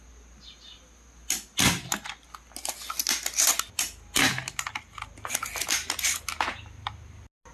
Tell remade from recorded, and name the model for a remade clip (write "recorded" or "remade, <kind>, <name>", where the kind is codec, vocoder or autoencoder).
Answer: recorded